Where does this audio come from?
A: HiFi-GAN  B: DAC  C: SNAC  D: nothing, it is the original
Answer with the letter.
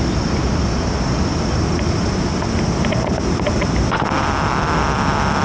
D